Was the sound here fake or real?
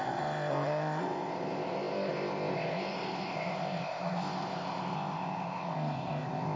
fake